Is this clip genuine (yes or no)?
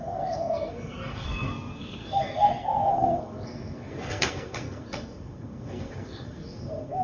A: no